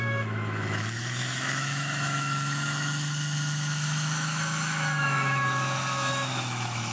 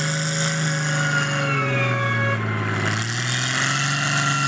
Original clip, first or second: second